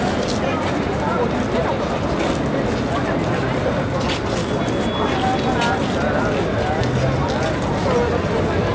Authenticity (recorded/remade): recorded